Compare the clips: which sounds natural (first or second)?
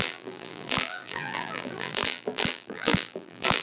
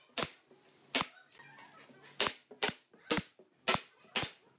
second